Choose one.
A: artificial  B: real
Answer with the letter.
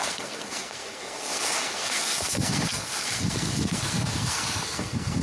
A